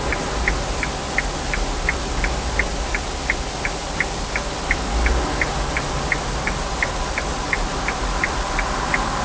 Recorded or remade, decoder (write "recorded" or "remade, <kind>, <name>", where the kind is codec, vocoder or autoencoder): recorded